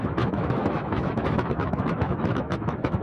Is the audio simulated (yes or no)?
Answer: yes